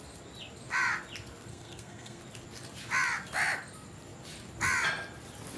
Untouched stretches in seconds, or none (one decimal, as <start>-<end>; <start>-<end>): 0.0-1.5; 2.2-5.6